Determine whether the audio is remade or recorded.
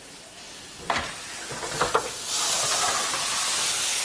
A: recorded